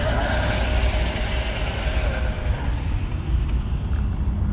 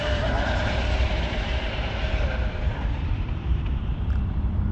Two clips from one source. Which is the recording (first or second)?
first